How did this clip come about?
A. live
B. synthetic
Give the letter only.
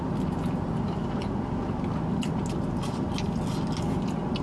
A